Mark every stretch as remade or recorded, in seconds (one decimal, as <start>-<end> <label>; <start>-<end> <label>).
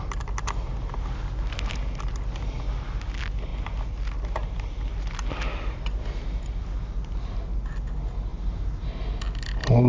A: 0.0-9.9 recorded